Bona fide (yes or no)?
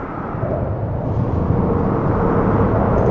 yes